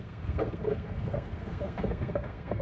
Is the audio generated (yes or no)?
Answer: yes